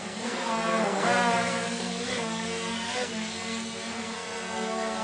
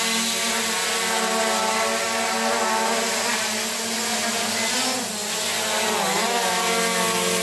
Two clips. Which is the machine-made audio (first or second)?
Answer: first